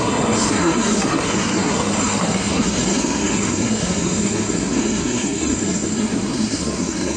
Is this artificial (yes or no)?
yes